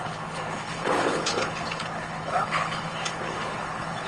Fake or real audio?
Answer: fake